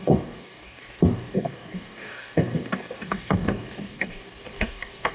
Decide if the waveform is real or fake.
fake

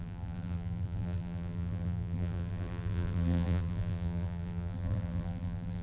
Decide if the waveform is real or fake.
fake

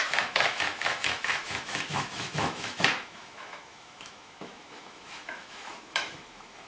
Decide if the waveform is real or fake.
fake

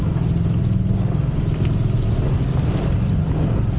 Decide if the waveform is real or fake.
real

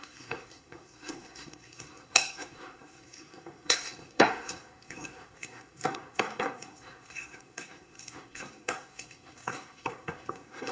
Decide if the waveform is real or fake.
fake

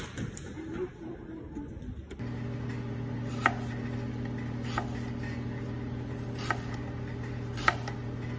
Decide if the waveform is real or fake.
real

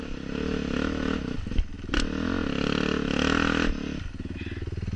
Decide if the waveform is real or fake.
real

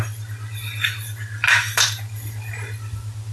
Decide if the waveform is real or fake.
real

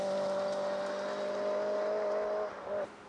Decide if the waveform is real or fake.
real